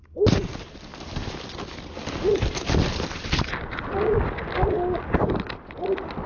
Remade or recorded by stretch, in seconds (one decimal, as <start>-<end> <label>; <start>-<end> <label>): 0.0-6.3 recorded